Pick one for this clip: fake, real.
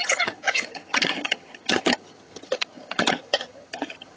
fake